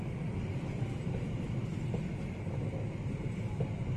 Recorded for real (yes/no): yes